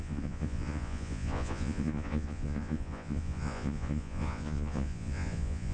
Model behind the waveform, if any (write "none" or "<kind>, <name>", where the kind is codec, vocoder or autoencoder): vocoder, Vocos